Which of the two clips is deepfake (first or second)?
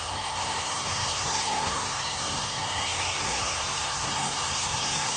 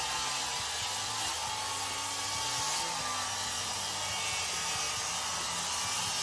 first